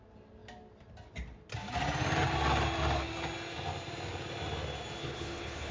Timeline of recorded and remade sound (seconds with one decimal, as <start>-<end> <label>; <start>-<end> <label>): 0.0-5.0 recorded; 5.0-5.7 remade